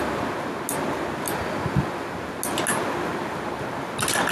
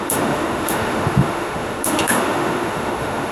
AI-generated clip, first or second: second